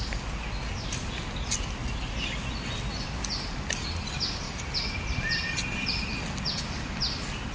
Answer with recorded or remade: recorded